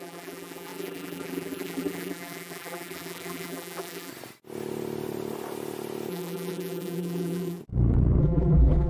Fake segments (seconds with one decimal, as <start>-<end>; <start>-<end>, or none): 0.0-4.1; 6.1-7.6; 8.2-8.9